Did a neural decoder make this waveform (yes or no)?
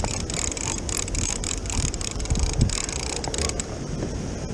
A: no